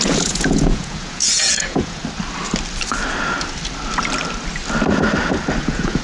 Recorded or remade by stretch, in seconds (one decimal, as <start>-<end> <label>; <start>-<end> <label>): 0.0-2.0 remade; 2.0-5.6 recorded; 5.6-6.0 remade